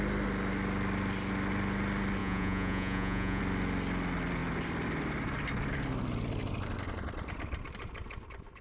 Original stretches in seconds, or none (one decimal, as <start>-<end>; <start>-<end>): 0.0-2.2; 3.4-8.6

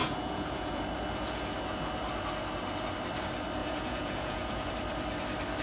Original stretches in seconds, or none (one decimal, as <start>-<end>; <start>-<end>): 0.8-3.6; 4.7-5.6

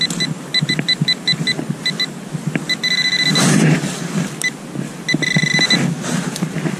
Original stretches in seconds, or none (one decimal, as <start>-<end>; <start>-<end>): 0.0-6.8